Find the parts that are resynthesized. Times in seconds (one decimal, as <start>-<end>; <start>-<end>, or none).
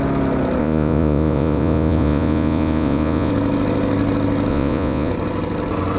0.6-3.3; 4.5-5.1